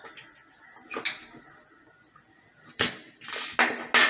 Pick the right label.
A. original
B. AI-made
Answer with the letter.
A